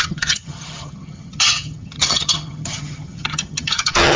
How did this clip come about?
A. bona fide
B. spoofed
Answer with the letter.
B